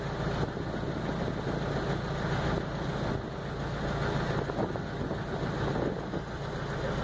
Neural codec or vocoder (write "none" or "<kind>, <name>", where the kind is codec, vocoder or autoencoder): none